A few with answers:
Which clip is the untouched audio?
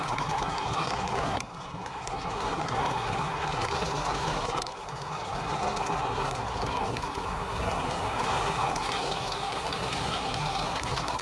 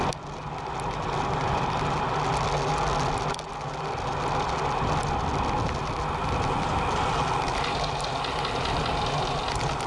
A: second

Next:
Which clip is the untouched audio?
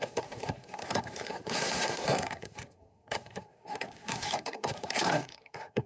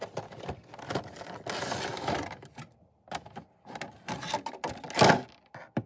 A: second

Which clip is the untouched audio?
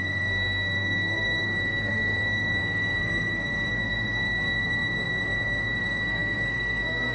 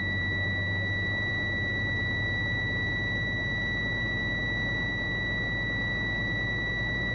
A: second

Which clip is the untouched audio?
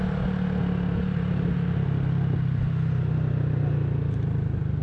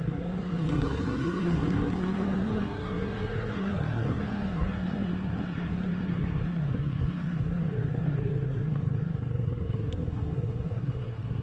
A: first